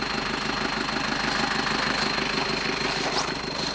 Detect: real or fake real